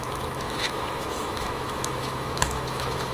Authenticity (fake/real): fake